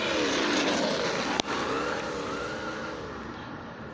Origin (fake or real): real